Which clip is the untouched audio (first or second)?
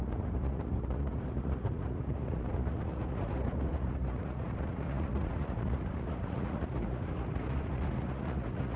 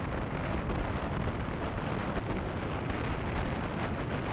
second